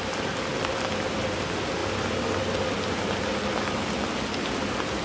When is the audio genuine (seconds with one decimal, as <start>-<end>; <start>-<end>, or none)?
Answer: 0.0-5.0